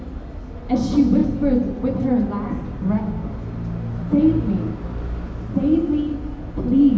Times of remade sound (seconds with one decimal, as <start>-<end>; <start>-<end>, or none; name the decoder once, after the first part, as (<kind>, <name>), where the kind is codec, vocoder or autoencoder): none